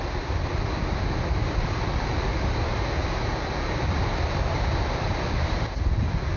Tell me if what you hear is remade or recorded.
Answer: recorded